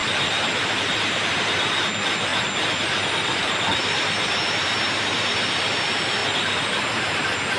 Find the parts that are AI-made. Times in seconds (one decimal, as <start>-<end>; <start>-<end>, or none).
0.6-2.3; 3.1-7.6